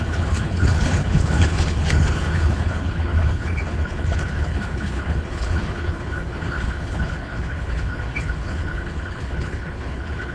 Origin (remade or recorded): remade